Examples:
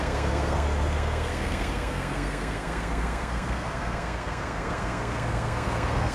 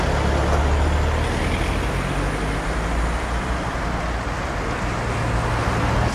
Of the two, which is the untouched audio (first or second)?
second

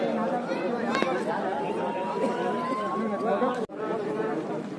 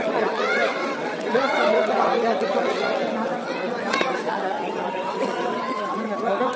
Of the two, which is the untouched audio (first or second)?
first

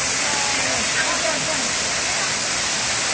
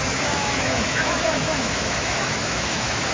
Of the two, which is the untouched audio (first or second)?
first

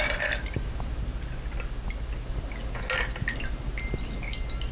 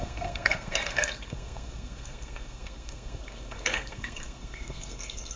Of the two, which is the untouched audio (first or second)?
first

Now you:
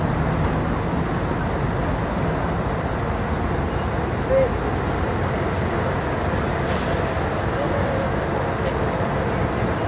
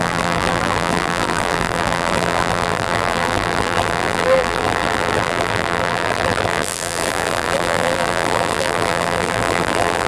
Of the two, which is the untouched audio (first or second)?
first